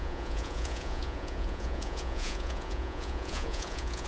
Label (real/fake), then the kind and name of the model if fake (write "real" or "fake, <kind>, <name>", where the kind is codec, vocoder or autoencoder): fake, vocoder, Vocos